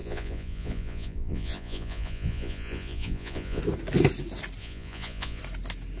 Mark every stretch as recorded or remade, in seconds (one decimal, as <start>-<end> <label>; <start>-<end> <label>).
0.0-3.6 remade; 3.6-4.6 recorded; 4.6-5.4 remade; 5.4-6.0 recorded